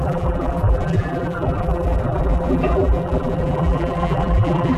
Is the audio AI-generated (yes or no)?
yes